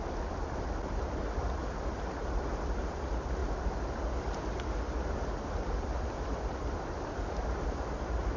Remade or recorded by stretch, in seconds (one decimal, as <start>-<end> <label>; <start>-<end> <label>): 0.0-8.4 recorded